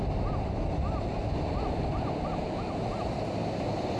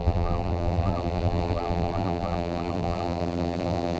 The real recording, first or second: first